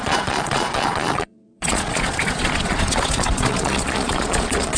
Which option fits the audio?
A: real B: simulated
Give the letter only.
B